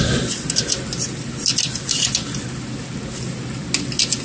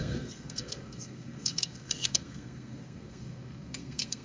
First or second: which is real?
first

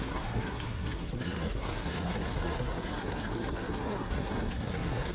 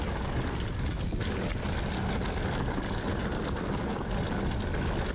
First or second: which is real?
second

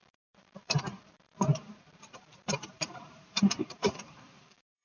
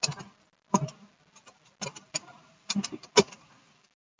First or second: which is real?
second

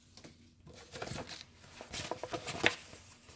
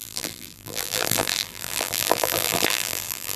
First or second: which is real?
first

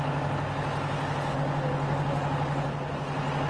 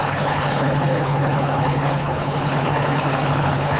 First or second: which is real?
first